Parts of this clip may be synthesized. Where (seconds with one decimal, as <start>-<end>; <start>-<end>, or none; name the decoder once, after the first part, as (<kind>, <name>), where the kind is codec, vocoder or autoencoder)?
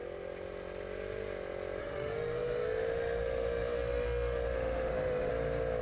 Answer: 1.8-5.3 (autoencoder, DAC-VAE)